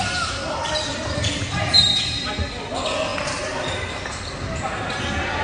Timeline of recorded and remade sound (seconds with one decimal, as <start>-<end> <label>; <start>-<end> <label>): 0.0-5.4 recorded